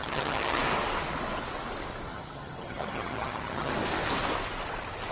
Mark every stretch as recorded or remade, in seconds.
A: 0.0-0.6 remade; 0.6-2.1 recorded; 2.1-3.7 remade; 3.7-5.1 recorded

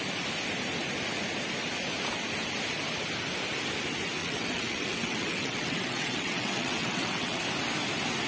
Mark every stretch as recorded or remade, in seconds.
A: 0.0-4.2 recorded; 4.2-7.4 remade; 7.4-8.3 recorded

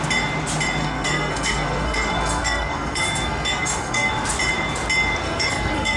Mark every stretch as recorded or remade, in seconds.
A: 0.0-0.8 recorded; 0.8-4.1 remade; 4.1-5.2 recorded; 5.2-6.0 remade

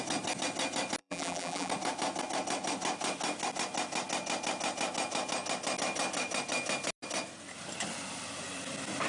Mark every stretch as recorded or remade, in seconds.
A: 0.0-1.0 recorded; 1.0-1.7 remade; 1.7-9.1 recorded

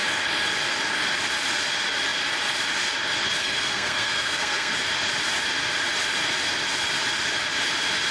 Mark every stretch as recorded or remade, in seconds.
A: 0.0-3.4 recorded; 3.4-4.7 remade; 4.7-8.1 recorded

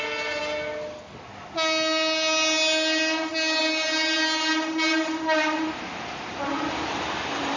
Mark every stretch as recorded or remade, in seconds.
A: 0.0-0.4 remade; 0.4-3.6 recorded; 3.6-7.6 remade

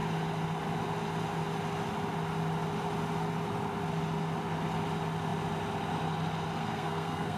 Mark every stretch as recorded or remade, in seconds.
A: 0.0-6.6 recorded; 6.6-7.4 remade